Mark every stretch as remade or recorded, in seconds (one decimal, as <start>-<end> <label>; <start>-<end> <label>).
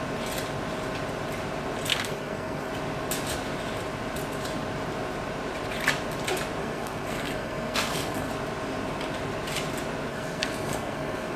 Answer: 0.0-1.9 recorded; 1.9-2.7 remade; 2.7-6.6 recorded; 6.6-8.3 remade; 8.3-10.1 recorded; 10.1-11.4 remade